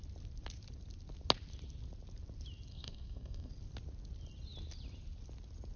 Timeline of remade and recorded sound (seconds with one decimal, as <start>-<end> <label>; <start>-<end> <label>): 0.0-2.7 recorded; 2.7-3.5 remade; 3.5-5.8 recorded